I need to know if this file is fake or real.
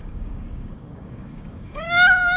fake